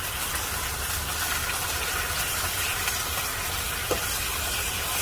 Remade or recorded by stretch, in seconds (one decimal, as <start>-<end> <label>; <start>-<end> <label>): 0.0-1.4 recorded; 1.4-2.0 remade; 2.0-5.0 recorded